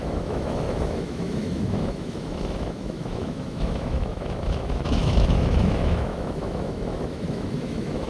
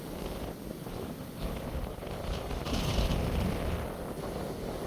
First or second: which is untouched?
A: second